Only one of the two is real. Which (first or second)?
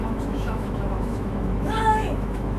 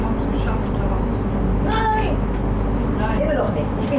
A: second